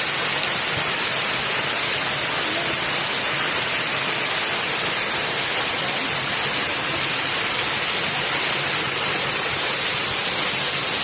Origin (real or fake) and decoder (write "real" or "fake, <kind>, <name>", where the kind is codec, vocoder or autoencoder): real